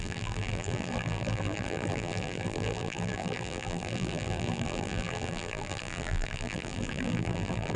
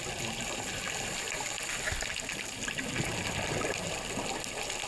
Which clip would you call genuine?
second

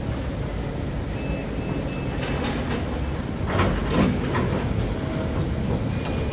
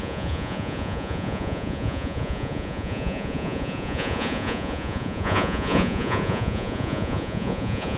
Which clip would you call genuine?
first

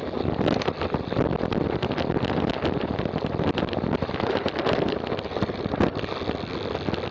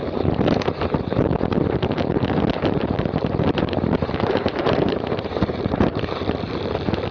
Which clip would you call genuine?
first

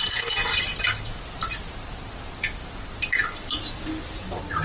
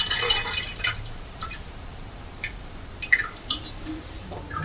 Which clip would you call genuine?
first